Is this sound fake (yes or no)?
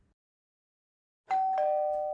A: no